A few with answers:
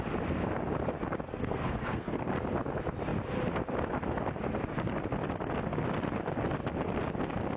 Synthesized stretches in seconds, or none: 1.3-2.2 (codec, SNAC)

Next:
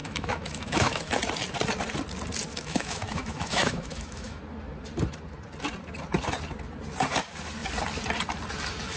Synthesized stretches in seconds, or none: 0.0-1.1 (autoencoder, DAC-VAE); 2.5-4.4

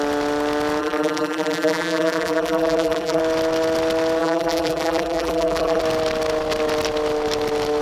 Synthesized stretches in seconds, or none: 0.8-3.2 (vocoder, BigVGAN v2); 4.2-5.8

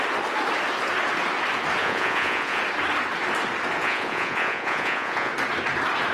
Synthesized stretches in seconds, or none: 1.8-2.6 (vocoder, Vocos); 3.8-5.3

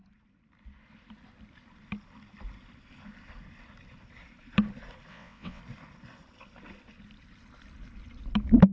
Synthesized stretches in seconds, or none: 5.1-5.6 (vocoder, WaveNeXt)

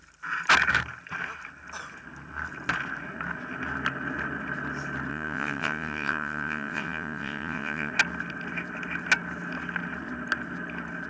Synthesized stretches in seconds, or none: 5.1-7.9 (vocoder, WaveNeXt)